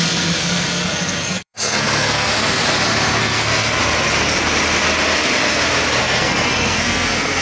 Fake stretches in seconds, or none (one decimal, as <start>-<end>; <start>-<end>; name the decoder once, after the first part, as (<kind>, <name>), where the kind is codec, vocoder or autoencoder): 0.0-2.6 (codec, SNAC); 3.2-3.8; 6.0-7.4